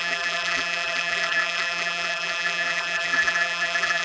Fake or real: fake